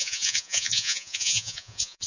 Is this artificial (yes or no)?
yes